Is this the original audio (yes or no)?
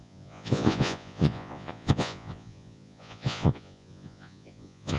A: no